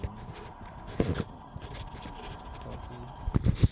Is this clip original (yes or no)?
yes